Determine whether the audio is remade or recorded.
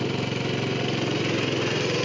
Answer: recorded